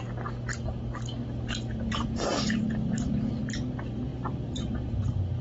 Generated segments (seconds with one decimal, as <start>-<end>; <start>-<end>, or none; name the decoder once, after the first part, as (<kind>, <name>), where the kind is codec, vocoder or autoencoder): 1.2-3.4 (vocoder, BigVGAN v2); 4.1-5.0